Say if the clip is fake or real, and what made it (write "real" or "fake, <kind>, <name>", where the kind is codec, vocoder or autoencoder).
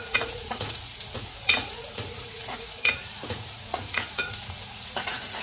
fake, vocoder, Vocos